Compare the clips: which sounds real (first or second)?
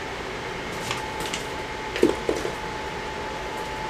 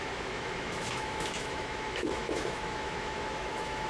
first